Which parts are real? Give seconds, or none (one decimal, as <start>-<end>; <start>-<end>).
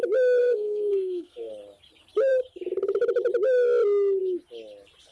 0.0-0.4; 1.5-5.1